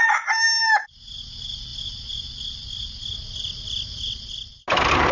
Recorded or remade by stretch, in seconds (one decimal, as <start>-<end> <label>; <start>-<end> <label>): 0.0-5.1 recorded